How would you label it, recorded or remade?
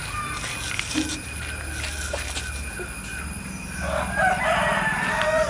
recorded